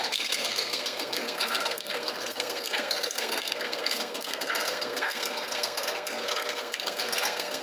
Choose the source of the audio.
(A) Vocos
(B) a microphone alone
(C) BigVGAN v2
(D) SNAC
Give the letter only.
D